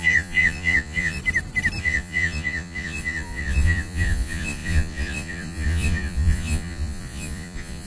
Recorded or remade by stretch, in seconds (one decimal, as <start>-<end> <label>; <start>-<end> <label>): 0.0-1.2 remade; 1.2-1.8 recorded; 1.8-7.9 remade